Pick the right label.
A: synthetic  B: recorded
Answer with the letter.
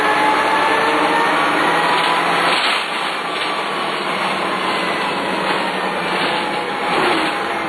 B